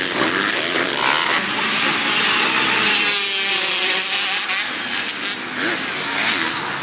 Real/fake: real